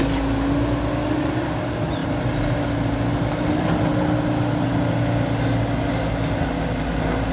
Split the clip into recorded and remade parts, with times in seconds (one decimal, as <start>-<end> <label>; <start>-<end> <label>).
0.0-7.3 recorded